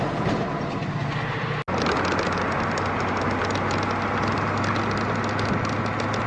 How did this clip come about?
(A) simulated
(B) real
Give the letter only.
B